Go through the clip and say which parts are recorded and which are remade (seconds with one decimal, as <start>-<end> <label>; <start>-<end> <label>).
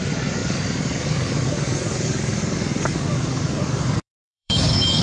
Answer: 0.0-5.0 remade